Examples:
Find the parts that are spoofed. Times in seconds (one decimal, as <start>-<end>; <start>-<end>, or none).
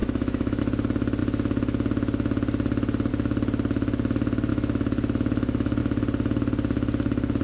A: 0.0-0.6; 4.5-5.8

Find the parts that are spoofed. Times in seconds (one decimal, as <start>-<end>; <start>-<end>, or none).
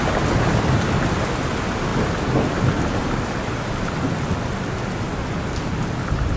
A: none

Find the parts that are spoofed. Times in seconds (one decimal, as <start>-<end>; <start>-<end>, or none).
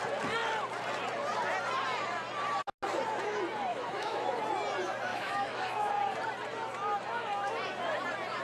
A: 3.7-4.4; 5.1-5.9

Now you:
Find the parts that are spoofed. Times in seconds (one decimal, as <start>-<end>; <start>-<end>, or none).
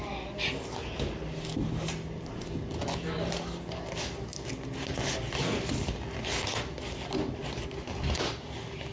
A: none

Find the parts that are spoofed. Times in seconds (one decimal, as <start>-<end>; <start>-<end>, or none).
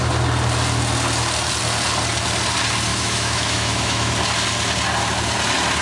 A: 2.9-4.1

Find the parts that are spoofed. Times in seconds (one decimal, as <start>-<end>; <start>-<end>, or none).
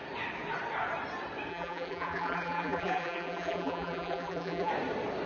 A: 1.5-4.7